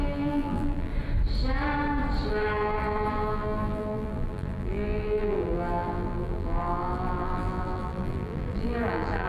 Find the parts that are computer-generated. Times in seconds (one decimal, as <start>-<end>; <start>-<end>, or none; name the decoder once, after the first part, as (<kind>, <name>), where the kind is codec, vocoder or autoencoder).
0.0-0.9 (vocoder, BigVGAN v2); 2.3-9.3